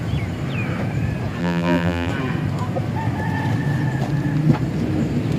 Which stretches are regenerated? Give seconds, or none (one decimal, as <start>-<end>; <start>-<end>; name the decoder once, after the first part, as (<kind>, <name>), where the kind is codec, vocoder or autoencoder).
1.4-2.1 (vocoder, BigVGAN v2)